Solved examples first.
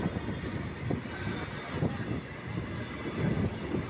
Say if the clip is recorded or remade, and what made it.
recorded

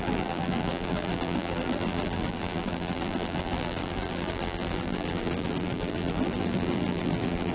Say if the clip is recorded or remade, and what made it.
remade, vocoder, BigVGAN v2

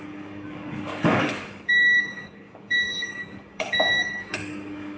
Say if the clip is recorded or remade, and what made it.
remade, codec, DAC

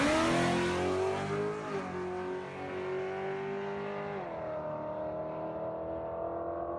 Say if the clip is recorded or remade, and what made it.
recorded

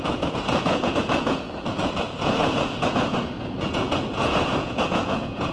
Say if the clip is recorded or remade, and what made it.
remade, vocoder, Vocos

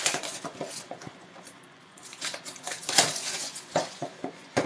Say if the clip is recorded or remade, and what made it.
remade, vocoder, Vocos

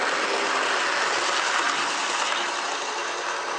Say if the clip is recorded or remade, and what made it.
recorded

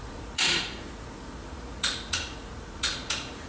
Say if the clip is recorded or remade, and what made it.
remade, vocoder, Vocos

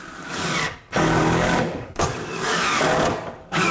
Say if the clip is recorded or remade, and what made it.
remade, codec, DAC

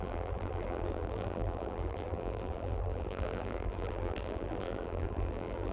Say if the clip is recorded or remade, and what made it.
remade, vocoder, BigVGAN v2